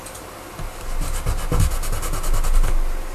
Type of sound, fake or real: real